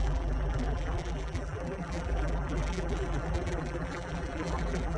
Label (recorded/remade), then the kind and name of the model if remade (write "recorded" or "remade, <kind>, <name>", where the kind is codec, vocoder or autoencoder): remade, vocoder, BigVGAN v2